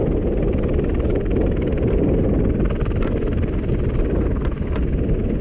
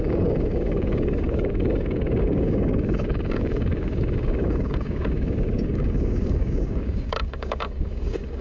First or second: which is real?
first